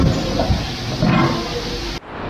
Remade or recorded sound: recorded